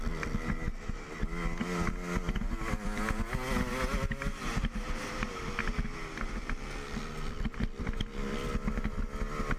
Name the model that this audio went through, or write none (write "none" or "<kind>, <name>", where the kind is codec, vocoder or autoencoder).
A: none